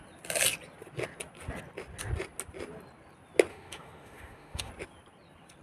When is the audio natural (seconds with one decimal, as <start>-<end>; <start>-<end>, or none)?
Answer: 0.0-3.5; 4.7-5.6